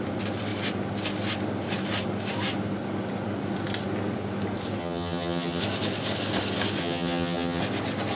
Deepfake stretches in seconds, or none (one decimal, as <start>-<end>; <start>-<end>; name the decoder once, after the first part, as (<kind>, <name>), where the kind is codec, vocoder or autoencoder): 4.8-5.6 (vocoder, HiFi-GAN); 6.8-7.6